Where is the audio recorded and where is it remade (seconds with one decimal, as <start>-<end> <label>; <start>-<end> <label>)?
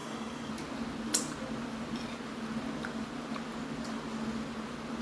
0.0-0.5 remade; 0.5-5.0 recorded